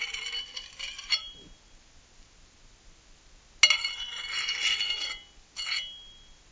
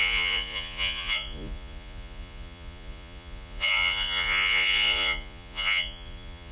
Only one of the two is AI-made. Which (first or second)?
second